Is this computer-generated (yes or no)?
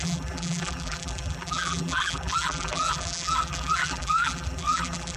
yes